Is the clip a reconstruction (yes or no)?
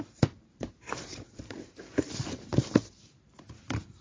yes